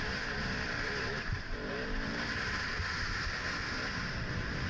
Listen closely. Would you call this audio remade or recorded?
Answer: recorded